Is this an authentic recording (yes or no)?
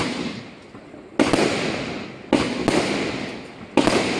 yes